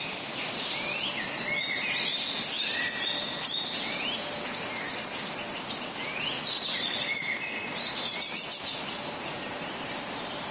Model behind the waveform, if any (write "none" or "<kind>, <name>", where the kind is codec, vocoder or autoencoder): none